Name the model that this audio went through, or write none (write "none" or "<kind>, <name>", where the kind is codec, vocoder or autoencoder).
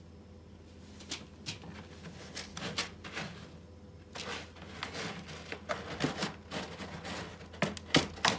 none